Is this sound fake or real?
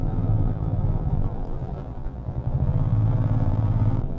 fake